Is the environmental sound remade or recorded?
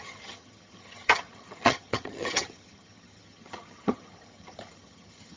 remade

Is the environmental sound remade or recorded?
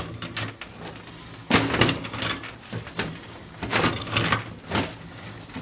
recorded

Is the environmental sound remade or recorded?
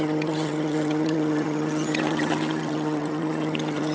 remade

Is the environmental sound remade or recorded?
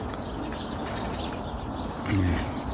recorded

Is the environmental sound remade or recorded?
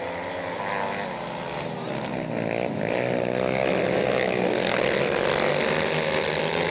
recorded